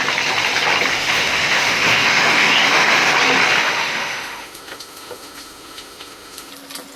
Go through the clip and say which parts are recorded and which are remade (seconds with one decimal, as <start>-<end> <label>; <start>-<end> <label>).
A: 0.0-0.9 recorded; 0.9-3.1 remade; 3.1-3.6 recorded; 3.6-6.5 remade; 6.5-7.0 recorded